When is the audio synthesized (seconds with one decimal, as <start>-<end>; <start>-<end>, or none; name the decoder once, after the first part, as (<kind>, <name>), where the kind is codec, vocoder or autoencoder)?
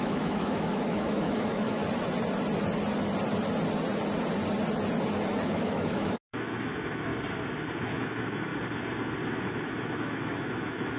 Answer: 0.0-1.8 (autoencoder, DAC-VAE); 5.5-7.1; 7.8-8.5; 9.3-11.0